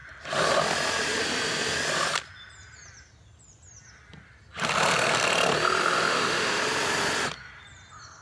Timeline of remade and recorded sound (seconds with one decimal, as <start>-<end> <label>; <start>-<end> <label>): 0.0-5.8 recorded; 5.8-6.6 remade; 6.6-8.2 recorded